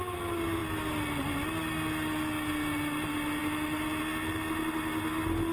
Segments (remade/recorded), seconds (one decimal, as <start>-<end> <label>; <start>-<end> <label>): 0.0-5.5 recorded